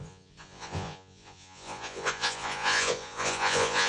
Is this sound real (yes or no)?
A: no